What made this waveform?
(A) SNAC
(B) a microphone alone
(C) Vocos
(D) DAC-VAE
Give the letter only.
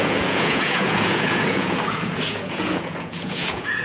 C